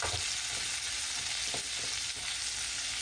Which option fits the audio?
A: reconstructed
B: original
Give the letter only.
B